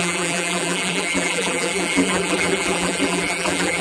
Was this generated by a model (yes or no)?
yes